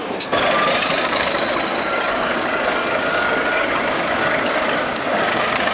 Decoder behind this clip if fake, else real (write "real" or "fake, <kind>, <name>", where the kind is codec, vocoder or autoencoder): fake, codec, DAC